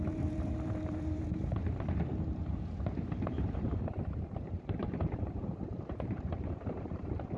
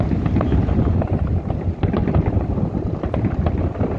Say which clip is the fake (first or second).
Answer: first